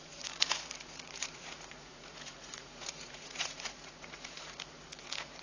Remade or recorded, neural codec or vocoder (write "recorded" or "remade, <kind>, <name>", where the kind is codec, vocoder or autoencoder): remade, vocoder, Vocos